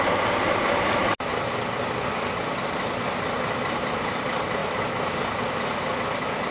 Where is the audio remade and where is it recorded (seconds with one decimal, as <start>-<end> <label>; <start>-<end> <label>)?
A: 0.0-6.5 recorded